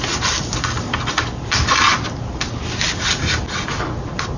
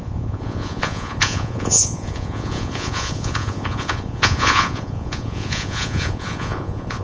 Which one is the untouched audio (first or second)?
first